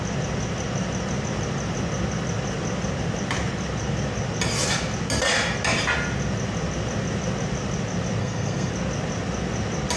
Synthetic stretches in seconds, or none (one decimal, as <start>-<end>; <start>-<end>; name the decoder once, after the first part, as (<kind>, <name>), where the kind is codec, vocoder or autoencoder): 8.2-8.7 (codec, SNAC)